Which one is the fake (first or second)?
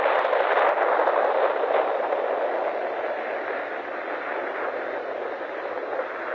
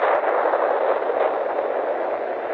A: first